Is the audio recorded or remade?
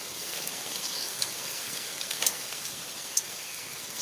remade